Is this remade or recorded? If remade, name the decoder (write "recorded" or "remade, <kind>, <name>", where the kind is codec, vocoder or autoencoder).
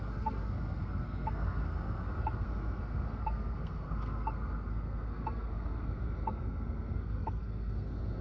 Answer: remade, codec, SNAC